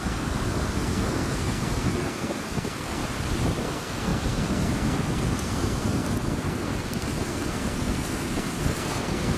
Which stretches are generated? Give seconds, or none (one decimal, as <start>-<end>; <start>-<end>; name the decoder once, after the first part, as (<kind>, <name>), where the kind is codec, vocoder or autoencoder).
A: 0.0-3.0 (codec, SNAC); 3.6-9.4